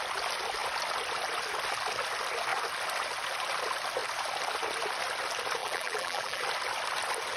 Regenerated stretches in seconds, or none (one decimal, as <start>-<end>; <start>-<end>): 5.6-6.4